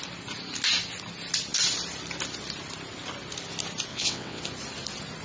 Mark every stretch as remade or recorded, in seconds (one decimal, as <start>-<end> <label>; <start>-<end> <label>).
0.0-3.9 recorded; 3.9-4.4 remade; 4.4-5.2 recorded